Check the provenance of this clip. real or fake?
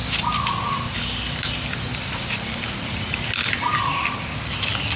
real